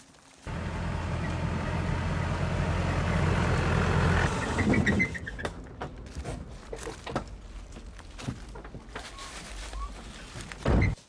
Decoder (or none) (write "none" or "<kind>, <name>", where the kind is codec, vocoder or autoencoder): none